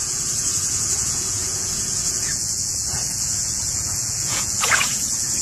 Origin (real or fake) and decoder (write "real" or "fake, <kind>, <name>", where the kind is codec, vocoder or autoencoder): fake, vocoder, Vocos